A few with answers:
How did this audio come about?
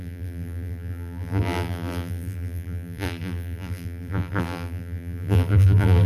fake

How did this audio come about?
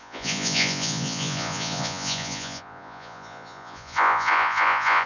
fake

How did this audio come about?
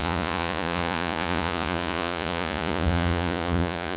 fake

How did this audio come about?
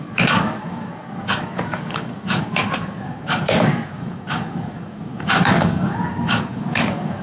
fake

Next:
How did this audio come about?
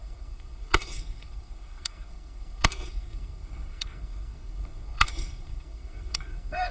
fake